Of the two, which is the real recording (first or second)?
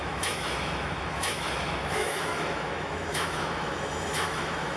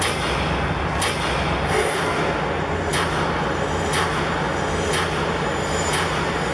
second